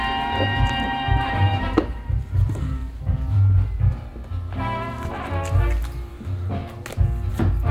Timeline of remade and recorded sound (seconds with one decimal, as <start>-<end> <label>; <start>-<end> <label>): 0.0-4.1 remade; 4.1-6.1 recorded; 6.1-6.6 remade; 6.6-7.3 recorded; 7.3-7.7 remade

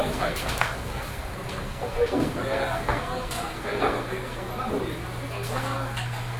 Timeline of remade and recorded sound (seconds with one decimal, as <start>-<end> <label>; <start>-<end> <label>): 0.0-4.5 remade; 4.5-5.3 recorded; 5.3-6.4 remade

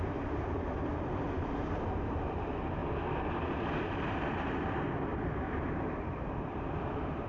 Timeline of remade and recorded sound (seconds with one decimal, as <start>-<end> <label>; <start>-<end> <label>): 0.0-2.8 remade; 2.8-3.5 recorded; 3.5-7.3 remade